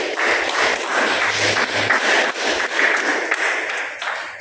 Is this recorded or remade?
recorded